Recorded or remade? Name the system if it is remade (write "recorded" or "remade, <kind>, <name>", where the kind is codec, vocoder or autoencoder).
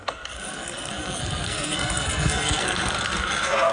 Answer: remade, codec, SNAC